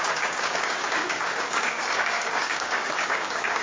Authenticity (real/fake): fake